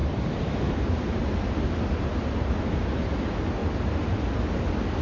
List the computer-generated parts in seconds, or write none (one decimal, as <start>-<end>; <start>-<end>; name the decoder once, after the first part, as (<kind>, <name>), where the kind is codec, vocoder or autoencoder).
0.0-0.8 (vocoder, BigVGAN v2); 3.6-4.2